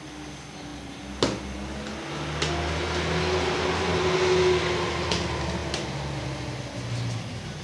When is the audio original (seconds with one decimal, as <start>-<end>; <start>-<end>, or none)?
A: 0.0-7.6